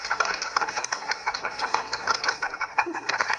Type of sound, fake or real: fake